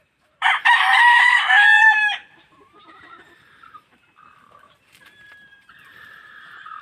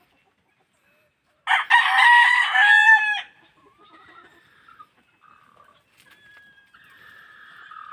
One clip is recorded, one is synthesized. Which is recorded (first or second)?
second